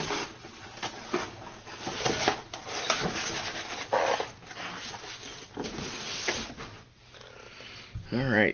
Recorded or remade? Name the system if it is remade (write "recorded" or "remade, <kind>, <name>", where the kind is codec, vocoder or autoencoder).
recorded